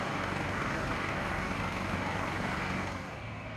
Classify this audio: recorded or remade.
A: remade